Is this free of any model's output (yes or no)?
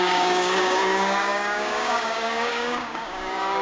no